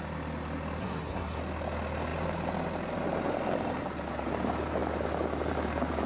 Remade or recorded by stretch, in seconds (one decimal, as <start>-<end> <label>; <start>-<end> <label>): 0.0-0.8 recorded; 0.8-1.4 remade; 1.4-6.1 recorded